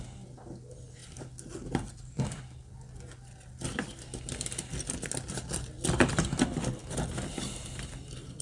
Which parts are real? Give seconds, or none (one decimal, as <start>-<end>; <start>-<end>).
0.0-8.4